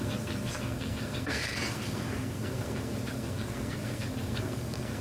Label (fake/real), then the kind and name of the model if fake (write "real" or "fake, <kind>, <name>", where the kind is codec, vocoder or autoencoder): fake, codec, SNAC